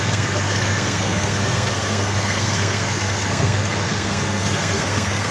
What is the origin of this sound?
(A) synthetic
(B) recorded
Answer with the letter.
A